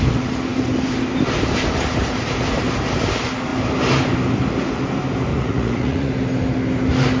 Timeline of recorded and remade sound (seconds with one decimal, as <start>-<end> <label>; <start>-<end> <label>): 0.0-5.3 recorded; 5.3-6.1 remade; 6.1-7.2 recorded